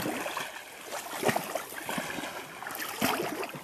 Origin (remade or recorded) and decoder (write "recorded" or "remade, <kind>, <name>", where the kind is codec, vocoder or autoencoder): recorded